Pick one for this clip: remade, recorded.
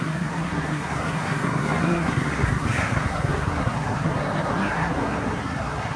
remade